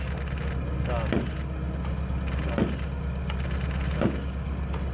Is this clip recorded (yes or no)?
yes